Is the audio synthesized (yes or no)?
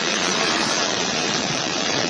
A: yes